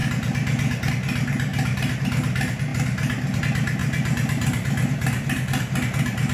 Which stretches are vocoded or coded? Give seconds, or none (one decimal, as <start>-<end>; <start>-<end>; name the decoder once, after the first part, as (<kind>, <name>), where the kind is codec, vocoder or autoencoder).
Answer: 1.5-2.0 (vocoder, BigVGAN v2); 3.8-5.6